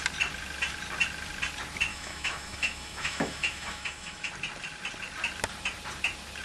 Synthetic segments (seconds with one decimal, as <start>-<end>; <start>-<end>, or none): 1.9-4.3